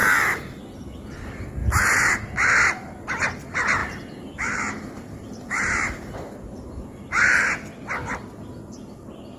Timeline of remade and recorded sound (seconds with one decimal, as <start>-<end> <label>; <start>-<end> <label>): 0.0-0.6 remade; 0.6-3.8 recorded; 3.8-7.4 remade; 7.4-9.4 recorded